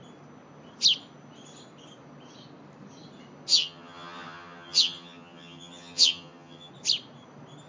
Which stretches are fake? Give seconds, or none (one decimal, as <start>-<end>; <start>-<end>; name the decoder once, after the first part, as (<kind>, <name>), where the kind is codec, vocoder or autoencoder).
3.5-6.7 (vocoder, HiFi-GAN)